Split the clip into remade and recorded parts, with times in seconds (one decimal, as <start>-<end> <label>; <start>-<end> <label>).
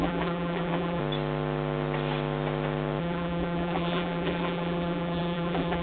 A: 0.0-1.0 remade; 1.0-3.0 recorded; 3.0-5.8 remade